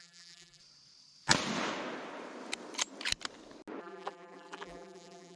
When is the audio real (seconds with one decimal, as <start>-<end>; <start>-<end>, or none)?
0.6-3.8